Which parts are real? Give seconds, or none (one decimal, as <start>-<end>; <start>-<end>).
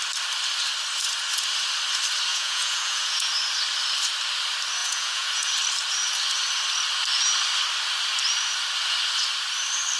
0.0-2.3; 3.3-4.8; 5.5-10.0